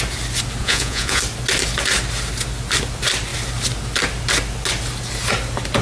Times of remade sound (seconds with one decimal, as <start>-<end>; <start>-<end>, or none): 0.6-1.2